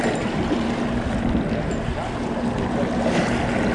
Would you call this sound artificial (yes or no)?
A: no